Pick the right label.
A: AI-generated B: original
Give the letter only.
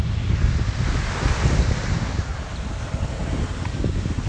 B